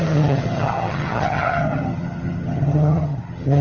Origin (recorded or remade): remade